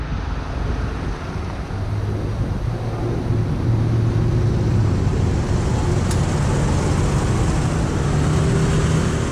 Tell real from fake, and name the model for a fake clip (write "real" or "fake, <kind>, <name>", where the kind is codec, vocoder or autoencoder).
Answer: real